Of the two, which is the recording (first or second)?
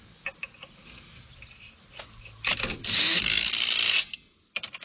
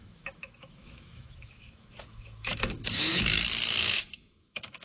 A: first